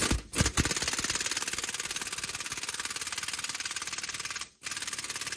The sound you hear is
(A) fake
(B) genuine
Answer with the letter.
B